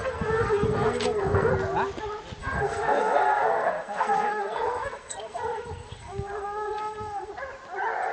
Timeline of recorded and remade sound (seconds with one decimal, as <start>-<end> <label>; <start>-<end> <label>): 0.0-1.5 remade; 1.5-2.4 recorded; 2.4-7.3 remade; 7.3-8.1 recorded